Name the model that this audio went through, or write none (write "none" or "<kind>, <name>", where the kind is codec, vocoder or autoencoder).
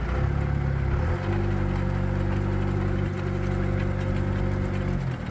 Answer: none